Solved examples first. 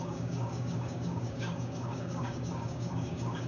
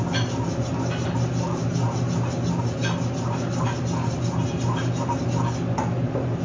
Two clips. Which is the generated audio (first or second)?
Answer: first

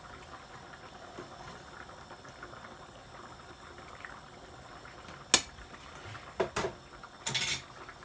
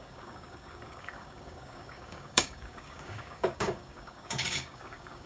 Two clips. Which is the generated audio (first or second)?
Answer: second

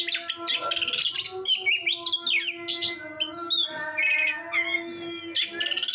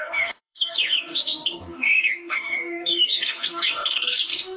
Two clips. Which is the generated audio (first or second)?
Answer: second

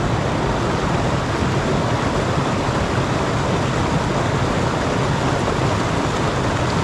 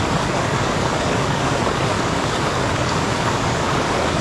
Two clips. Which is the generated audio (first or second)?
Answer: second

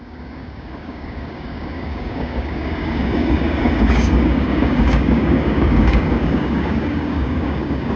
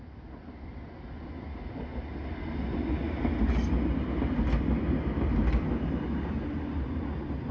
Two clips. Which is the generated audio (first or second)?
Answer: first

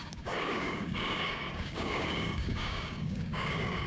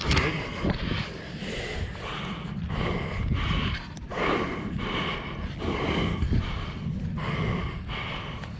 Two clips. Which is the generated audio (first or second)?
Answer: first